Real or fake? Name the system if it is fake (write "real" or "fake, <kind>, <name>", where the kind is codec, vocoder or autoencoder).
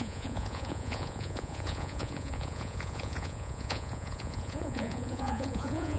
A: fake, vocoder, Vocos